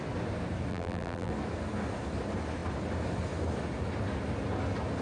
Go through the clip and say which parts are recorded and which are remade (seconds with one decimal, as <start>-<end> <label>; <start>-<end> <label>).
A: 0.0-0.7 recorded; 0.7-1.3 remade; 1.3-5.0 recorded